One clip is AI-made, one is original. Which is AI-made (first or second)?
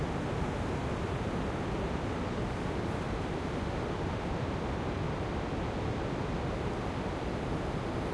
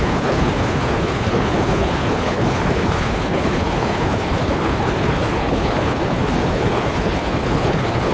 second